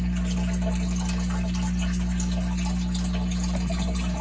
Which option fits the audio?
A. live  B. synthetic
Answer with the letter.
A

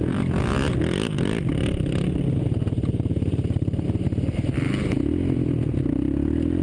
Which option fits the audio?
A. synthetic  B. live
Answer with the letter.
B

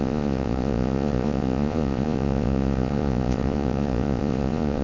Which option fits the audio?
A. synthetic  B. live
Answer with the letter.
A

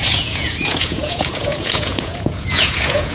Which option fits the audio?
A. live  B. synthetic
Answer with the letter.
B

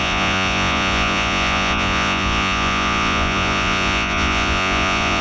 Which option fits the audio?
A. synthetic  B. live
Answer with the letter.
A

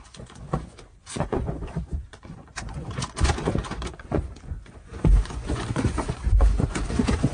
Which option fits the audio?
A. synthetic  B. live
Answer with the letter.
A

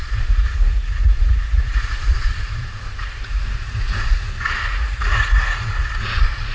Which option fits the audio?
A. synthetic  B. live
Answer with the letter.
A